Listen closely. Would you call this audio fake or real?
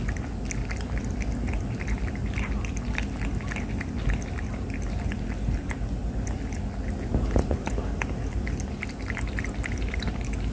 real